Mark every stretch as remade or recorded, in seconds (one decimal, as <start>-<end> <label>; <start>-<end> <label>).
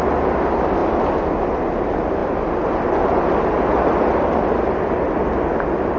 0.0-6.0 recorded